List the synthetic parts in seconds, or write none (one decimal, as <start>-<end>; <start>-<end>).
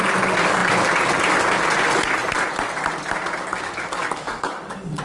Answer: 4.0-5.0